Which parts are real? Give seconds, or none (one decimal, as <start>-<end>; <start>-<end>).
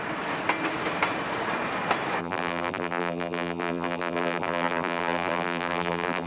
0.0-2.2